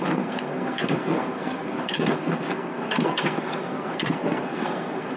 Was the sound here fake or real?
fake